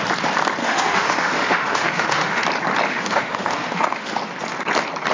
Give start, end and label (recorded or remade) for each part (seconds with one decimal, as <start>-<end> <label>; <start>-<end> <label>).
0.0-0.6 recorded; 0.6-2.4 remade; 2.4-2.9 recorded; 2.9-4.2 remade; 4.2-5.1 recorded